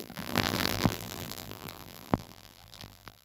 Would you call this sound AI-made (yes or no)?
yes